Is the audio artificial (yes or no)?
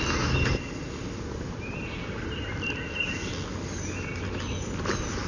no